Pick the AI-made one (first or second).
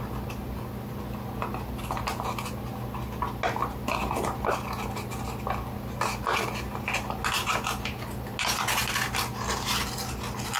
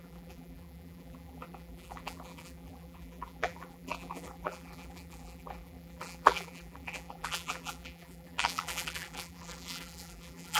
second